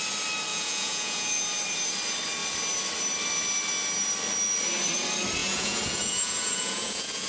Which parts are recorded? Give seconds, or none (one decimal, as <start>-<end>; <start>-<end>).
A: 0.0-0.5; 1.4-5.4